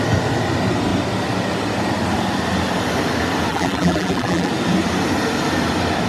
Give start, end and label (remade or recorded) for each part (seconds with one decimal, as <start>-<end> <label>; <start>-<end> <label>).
0.0-3.5 recorded; 3.5-4.5 remade; 4.5-6.1 recorded